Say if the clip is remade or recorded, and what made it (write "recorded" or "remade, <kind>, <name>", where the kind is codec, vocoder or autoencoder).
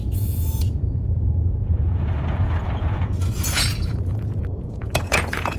remade, vocoder, Vocos